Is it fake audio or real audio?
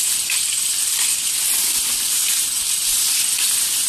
real